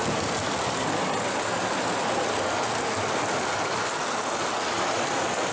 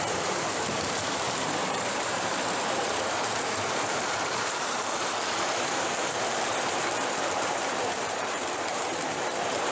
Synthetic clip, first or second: second